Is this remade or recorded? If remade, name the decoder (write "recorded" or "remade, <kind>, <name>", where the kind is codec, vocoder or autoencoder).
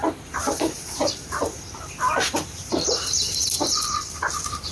remade, vocoder, BigVGAN v2